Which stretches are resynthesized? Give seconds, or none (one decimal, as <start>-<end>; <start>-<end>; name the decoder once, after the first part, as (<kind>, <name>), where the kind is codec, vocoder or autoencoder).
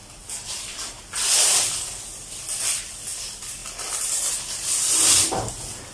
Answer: none